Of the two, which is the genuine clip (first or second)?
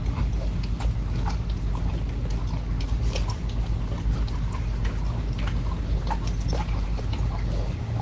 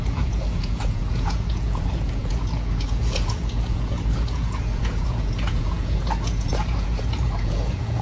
first